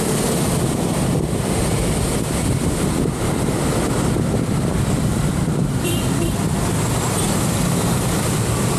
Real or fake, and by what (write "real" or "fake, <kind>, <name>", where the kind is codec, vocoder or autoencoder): fake, vocoder, BigVGAN v2